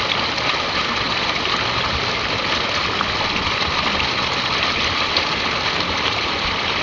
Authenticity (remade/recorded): recorded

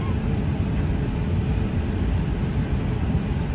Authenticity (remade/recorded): remade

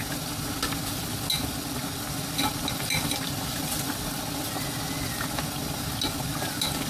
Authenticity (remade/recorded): recorded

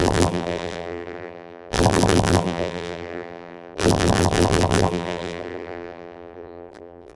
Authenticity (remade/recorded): remade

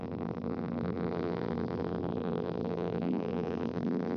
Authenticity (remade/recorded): remade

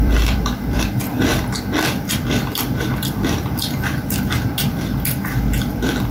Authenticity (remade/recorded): remade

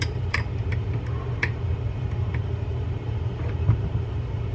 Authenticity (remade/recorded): remade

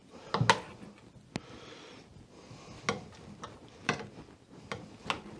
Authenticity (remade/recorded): recorded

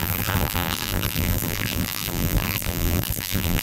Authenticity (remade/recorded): remade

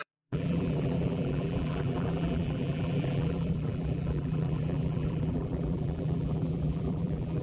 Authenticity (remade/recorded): remade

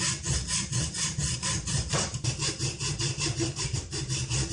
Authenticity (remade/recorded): remade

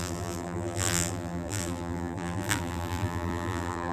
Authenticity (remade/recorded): remade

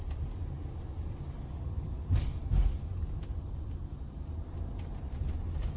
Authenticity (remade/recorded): remade